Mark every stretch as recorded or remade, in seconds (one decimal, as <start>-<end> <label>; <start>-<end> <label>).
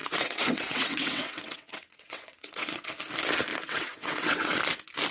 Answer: 0.0-2.9 remade; 2.9-3.5 recorded; 3.5-4.6 remade; 4.6-5.1 recorded